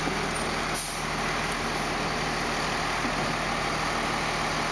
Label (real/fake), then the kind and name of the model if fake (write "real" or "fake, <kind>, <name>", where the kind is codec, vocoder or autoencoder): real